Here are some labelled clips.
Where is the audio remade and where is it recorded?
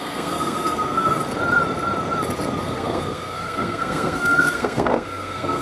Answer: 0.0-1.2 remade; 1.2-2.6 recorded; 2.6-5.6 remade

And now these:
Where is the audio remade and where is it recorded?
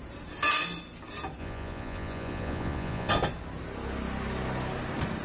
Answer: 0.0-1.4 recorded; 1.4-3.1 remade; 3.1-5.2 recorded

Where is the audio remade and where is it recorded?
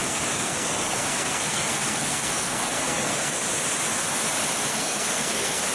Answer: 0.0-3.4 remade; 3.4-4.7 recorded; 4.7-5.7 remade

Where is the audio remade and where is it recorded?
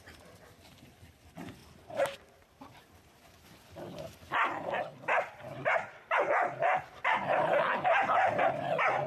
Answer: 0.0-1.6 remade; 1.6-3.7 recorded; 3.7-4.9 remade; 4.9-9.1 recorded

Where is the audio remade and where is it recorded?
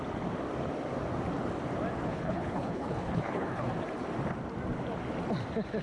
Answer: 0.0-2.0 recorded; 2.0-3.7 remade; 3.7-5.8 recorded